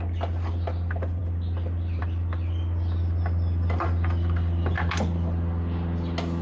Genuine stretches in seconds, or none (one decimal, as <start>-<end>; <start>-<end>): 0.0-6.4